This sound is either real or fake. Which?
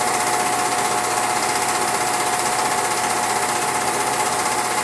real